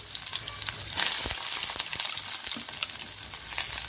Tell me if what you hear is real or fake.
real